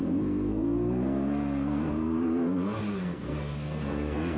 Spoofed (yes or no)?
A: yes